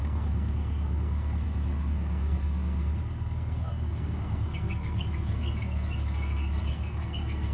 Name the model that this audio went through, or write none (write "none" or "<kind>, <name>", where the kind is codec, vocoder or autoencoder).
codec, SNAC